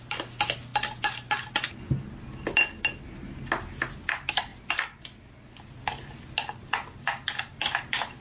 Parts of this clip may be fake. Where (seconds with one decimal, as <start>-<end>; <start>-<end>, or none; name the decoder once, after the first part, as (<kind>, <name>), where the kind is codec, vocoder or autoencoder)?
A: none